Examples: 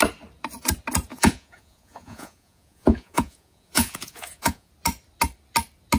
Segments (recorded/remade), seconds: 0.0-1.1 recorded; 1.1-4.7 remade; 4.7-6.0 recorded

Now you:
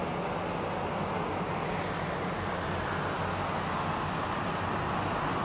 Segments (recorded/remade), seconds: 0.0-5.4 recorded

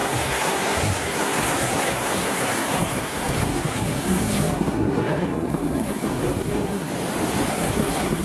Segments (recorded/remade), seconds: 0.0-6.9 remade; 6.9-7.5 recorded; 7.5-8.2 remade

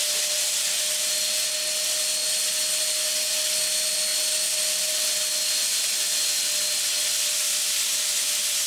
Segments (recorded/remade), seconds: 0.0-8.7 recorded

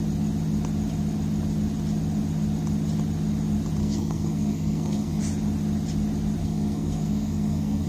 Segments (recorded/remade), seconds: 0.0-3.8 recorded; 3.8-5.2 remade; 5.2-6.4 recorded; 6.4-7.9 remade

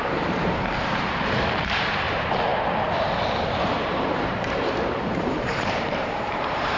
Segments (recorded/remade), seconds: 0.0-2.5 remade; 2.5-3.4 recorded; 3.4-6.8 remade

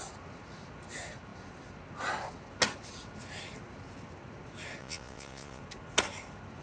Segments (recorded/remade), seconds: 0.0-4.8 recorded; 4.8-5.6 remade; 5.6-6.6 recorded